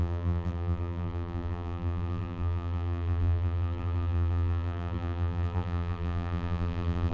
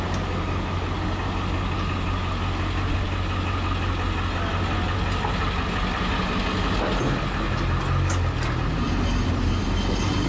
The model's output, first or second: first